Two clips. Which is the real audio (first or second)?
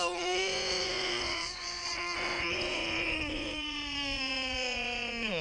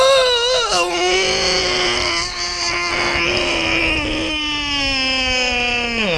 second